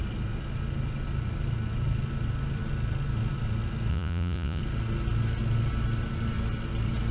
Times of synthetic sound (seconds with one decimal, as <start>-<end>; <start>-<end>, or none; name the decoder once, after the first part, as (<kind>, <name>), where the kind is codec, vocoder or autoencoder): 3.9-4.6 (vocoder, Vocos)